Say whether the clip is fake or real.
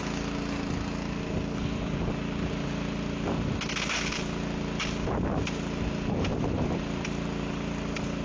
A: real